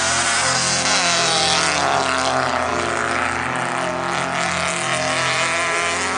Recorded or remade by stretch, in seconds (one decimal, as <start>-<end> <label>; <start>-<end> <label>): 0.0-6.2 recorded